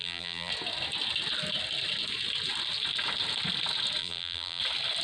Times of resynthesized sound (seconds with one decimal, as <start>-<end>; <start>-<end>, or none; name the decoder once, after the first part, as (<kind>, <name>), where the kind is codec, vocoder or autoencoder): 0.0-0.5 (vocoder, BigVGAN v2); 4.0-4.6